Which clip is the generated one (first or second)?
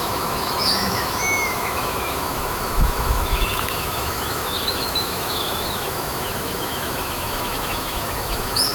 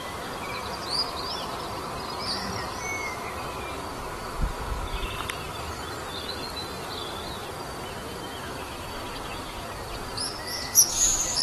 first